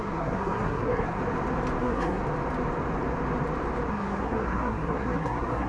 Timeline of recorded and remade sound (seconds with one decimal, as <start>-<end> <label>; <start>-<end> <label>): 0.0-1.2 remade; 1.2-1.8 recorded; 1.8-2.2 remade; 2.2-3.9 recorded; 3.9-5.7 remade